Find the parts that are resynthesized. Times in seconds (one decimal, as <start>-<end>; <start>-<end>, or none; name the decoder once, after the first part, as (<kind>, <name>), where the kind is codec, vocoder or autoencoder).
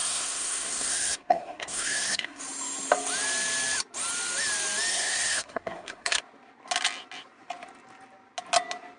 0.0-2.4 (codec, SNAC); 4.9-6.2